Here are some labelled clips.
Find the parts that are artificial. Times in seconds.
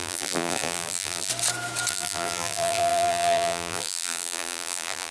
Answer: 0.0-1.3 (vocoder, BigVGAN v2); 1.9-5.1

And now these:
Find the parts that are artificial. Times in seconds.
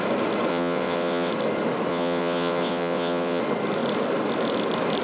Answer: 0.5-1.3 (vocoder, WaveNeXt); 1.9-3.4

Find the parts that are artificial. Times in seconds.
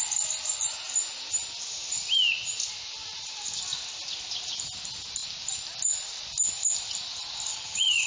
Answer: 7.5-8.1 (vocoder, HiFi-GAN)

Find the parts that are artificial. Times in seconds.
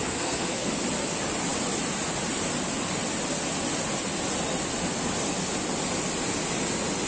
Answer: 0.0-0.7 (codec, SNAC)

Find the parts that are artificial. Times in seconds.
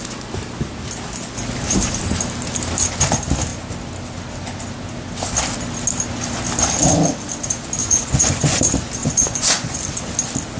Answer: 7.8-8.6 (vocoder, Vocos); 9.0-9.8